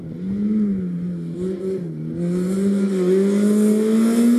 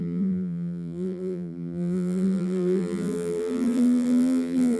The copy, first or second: second